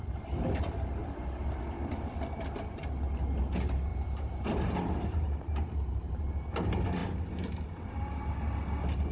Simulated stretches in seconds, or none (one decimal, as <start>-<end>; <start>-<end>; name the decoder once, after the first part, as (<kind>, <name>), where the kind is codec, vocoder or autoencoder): 1.0-1.6 (vocoder, BigVGAN v2); 3.9-6.3